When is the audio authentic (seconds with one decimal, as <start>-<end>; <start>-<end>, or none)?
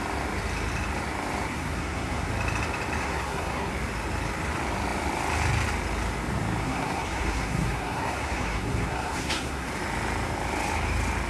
0.0-1.5; 2.3-3.0; 3.7-6.6; 9.7-11.3